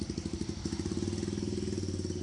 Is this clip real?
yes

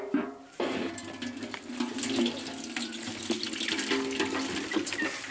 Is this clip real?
yes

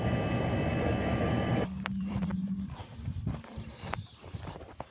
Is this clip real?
no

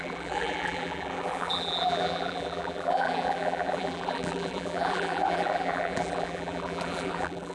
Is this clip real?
no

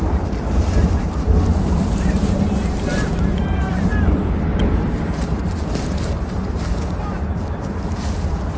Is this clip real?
no